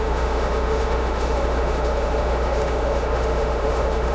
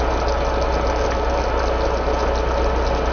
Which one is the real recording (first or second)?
second